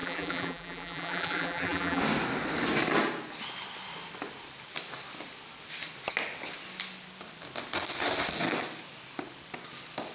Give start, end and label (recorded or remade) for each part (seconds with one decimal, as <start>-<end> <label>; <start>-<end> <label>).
0.0-2.0 remade; 2.0-10.1 recorded